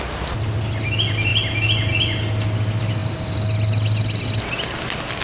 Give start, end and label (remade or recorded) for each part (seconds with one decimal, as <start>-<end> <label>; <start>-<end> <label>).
0.0-5.2 recorded